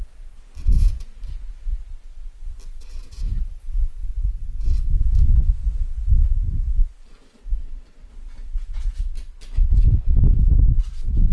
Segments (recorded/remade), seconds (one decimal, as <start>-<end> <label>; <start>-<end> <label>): 0.0-2.7 recorded; 2.7-4.9 remade; 4.9-7.4 recorded; 7.4-8.1 remade; 8.1-11.3 recorded

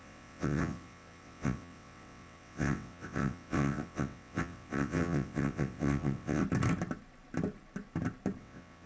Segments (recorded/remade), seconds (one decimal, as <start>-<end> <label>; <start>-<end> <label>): 0.0-6.4 remade; 6.4-8.4 recorded; 8.4-8.9 remade

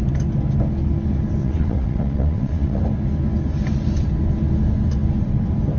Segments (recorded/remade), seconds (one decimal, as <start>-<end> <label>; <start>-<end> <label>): 0.0-1.4 recorded; 1.4-2.8 remade; 2.8-5.8 recorded

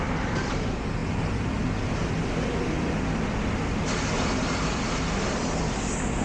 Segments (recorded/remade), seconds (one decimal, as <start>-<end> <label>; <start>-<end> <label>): 0.0-6.2 recorded

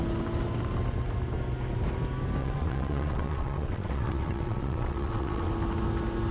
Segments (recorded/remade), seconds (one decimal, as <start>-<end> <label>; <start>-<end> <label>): 0.0-2.4 recorded; 2.4-5.5 remade; 5.5-6.3 recorded

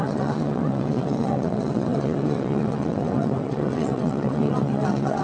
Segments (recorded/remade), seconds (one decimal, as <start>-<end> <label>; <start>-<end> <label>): 0.0-5.2 remade

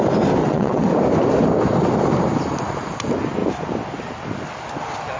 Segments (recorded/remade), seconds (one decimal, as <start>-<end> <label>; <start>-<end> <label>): 0.0-0.4 recorded; 0.4-0.9 remade; 0.9-5.2 recorded